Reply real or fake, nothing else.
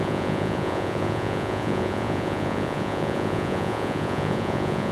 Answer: fake